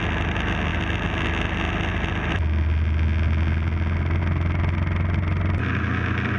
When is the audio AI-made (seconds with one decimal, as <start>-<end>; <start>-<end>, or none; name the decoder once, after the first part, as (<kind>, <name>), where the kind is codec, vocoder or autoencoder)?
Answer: none